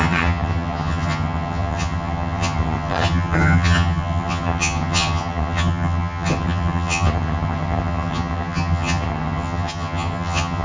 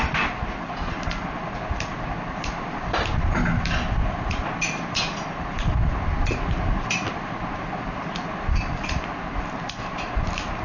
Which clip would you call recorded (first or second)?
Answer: second